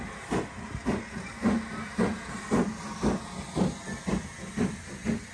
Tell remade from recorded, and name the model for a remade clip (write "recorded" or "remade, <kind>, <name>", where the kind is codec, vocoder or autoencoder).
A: recorded